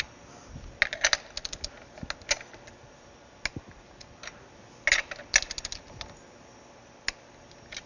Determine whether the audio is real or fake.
real